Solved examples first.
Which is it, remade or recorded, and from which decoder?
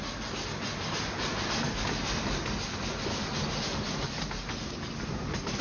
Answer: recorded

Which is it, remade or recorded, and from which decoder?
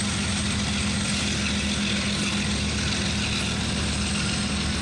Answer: recorded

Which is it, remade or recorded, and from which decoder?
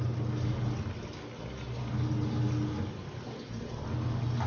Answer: recorded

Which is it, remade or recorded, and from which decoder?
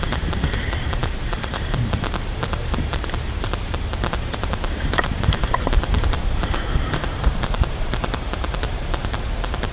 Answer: remade, vocoder, BigVGAN v2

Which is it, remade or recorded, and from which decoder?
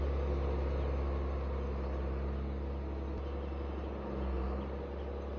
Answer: recorded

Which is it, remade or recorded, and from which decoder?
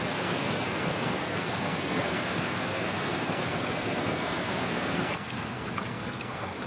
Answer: remade, codec, SNAC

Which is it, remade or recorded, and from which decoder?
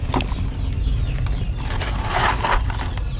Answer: recorded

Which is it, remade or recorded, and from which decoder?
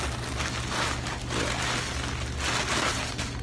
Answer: recorded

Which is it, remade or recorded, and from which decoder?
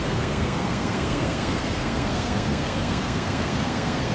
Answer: remade, codec, SNAC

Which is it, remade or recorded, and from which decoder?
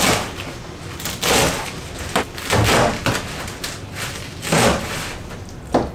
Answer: recorded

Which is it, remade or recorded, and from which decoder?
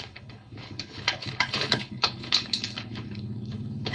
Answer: remade, codec, HILCodec